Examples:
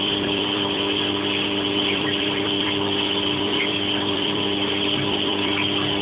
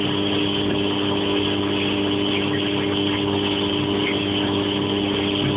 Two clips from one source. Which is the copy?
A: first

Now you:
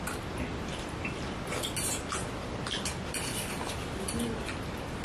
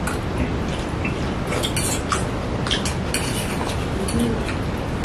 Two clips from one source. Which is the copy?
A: first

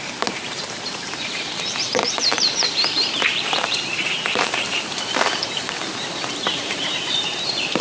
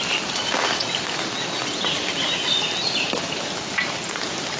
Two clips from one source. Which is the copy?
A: first